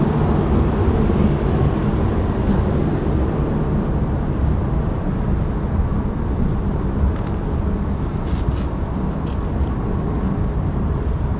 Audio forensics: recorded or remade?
recorded